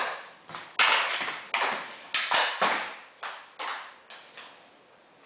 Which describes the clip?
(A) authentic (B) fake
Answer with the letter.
A